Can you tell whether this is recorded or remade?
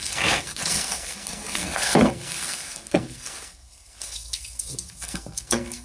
remade